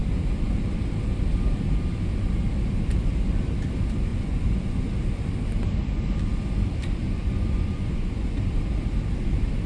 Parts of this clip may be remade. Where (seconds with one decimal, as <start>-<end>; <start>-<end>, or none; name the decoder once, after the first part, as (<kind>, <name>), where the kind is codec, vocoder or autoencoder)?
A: 4.1-4.9 (vocoder, Vocos); 7.0-8.4

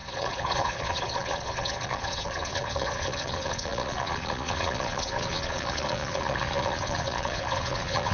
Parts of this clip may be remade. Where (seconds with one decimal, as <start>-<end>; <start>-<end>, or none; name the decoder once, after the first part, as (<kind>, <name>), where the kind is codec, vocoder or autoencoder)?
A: 0.0-8.1 (vocoder, Vocos)

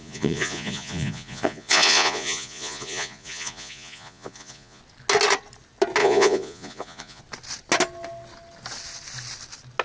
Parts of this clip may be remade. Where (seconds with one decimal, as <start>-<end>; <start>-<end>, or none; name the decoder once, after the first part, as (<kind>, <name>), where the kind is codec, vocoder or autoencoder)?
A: 0.0-4.8 (vocoder, Vocos); 6.0-7.2

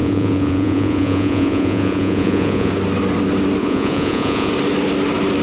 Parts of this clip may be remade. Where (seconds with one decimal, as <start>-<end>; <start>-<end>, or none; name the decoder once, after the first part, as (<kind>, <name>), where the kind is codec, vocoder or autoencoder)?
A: 0.0-2.7 (vocoder, Vocos); 3.6-4.5

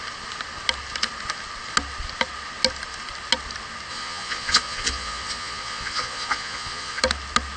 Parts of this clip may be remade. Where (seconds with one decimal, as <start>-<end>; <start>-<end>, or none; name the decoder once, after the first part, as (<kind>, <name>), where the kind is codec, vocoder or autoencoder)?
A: 3.9-7.0 (vocoder, Vocos)